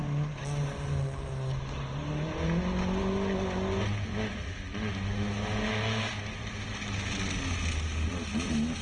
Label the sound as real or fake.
real